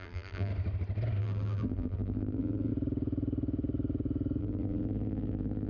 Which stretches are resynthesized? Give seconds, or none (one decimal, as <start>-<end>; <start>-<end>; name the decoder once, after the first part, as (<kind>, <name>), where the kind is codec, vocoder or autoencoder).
0.0-0.5 (vocoder, BigVGAN v2); 1.2-2.7; 4.4-5.7